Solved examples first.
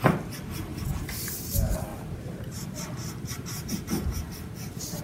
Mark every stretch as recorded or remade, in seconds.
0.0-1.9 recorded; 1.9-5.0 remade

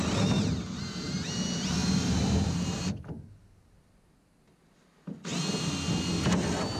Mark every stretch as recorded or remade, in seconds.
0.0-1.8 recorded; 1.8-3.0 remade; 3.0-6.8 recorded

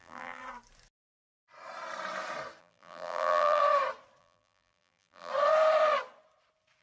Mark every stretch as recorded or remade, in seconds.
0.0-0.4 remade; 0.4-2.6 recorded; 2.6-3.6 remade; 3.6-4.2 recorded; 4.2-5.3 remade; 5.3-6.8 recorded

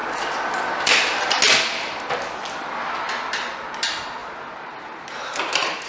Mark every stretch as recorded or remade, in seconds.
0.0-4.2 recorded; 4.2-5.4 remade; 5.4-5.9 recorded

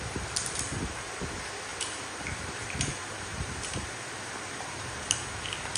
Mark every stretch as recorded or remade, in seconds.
0.0-1.7 recorded; 1.7-5.2 remade; 5.2-5.8 recorded